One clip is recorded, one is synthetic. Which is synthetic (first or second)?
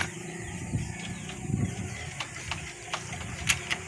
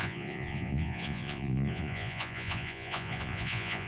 second